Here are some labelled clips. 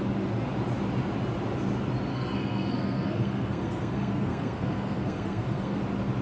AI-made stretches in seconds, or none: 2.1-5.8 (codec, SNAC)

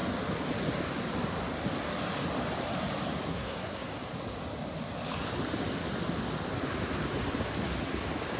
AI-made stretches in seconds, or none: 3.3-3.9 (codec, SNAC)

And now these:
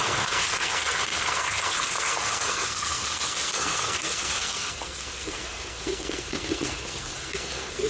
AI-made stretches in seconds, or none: 0.0-7.9 (codec, SNAC)

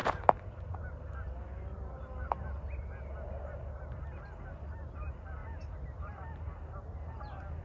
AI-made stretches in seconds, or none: none

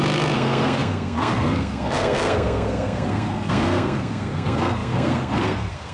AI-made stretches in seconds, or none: 0.0-5.9 (codec, SNAC)